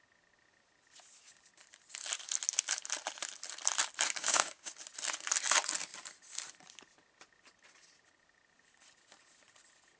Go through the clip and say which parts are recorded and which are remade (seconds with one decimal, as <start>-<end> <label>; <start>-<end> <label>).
0.0-4.2 recorded; 4.2-4.7 remade; 4.7-10.0 recorded